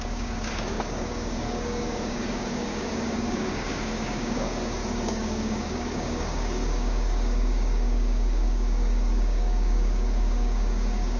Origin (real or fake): fake